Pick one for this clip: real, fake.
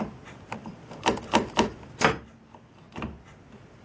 real